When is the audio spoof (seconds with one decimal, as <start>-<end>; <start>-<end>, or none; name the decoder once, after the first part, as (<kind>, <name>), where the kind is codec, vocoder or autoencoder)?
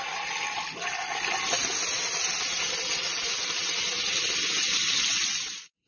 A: none